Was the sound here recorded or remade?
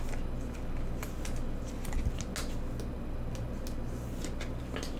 recorded